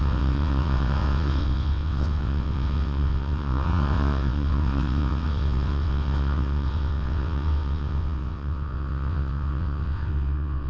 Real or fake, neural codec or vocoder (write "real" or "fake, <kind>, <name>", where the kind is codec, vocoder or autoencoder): fake, vocoder, WaveNeXt